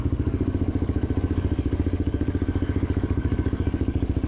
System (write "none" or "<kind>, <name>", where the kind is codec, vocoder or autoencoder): codec, DAC